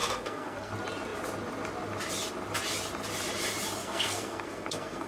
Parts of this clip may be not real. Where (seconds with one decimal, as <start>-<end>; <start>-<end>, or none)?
0.0-0.7; 3.8-5.1